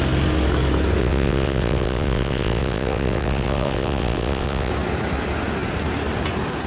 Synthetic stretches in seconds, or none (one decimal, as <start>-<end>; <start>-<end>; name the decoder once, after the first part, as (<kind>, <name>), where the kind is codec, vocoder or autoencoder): 1.0-4.7 (vocoder, WaveNeXt)